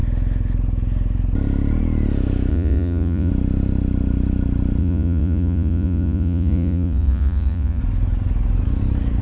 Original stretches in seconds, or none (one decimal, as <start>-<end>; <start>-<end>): 0.0-2.5; 3.3-4.8; 7.8-9.2

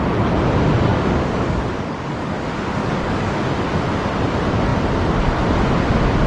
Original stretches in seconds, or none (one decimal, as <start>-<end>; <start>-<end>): 0.0-0.9; 2.4-2.8; 3.4-6.3

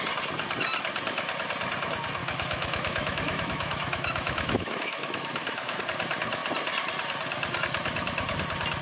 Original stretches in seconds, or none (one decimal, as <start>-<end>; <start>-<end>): 0.0-2.2; 5.8-8.8